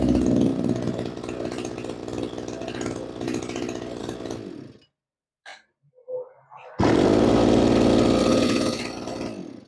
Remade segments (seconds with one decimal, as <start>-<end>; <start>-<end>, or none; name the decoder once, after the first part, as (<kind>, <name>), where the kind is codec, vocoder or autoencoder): 8.3-8.8 (vocoder, Vocos)